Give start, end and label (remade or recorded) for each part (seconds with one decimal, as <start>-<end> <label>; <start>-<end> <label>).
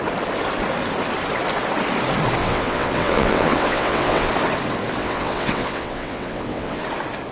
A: 0.0-2.4 recorded; 2.4-4.3 remade; 4.3-5.0 recorded; 5.0-6.8 remade; 6.8-7.3 recorded